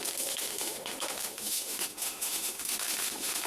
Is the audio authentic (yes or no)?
no